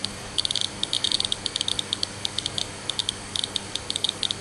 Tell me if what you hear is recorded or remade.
remade